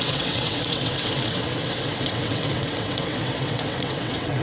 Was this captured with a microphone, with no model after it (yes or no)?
no